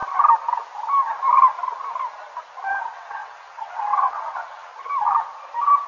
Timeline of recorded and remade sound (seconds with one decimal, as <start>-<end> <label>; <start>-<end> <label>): 0.0-2.8 recorded; 2.8-4.7 remade; 4.7-5.9 recorded